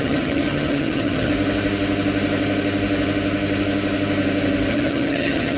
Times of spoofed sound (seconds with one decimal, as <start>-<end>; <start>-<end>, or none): 0.0-1.3; 4.7-5.6